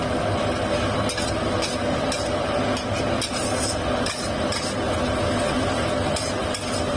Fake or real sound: real